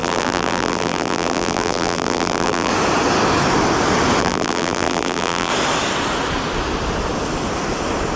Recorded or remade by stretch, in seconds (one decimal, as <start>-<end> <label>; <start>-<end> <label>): 0.0-2.7 remade; 2.7-4.2 recorded; 4.2-5.5 remade; 5.5-8.2 recorded